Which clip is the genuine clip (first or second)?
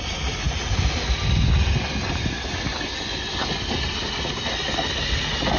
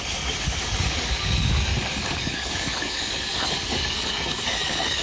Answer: first